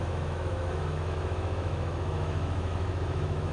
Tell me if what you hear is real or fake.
fake